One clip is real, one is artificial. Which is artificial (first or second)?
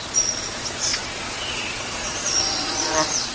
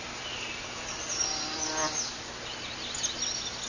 first